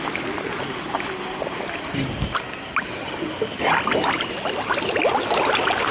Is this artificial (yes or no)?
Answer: no